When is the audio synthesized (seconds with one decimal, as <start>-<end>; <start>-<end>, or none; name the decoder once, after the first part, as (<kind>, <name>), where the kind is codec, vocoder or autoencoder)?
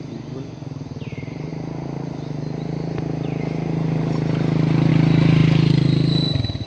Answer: none